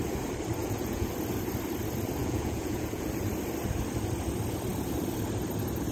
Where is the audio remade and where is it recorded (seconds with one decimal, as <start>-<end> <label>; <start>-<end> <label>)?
0.0-0.6 recorded; 0.6-1.1 remade; 1.1-2.2 recorded; 2.2-3.1 remade; 3.1-5.9 recorded